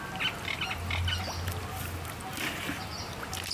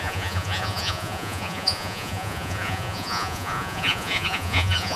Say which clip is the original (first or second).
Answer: first